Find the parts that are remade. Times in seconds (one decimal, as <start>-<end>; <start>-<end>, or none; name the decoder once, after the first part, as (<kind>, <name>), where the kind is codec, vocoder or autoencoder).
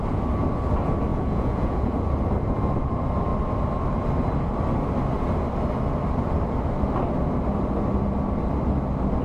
1.1-2.1 (vocoder, Vocos)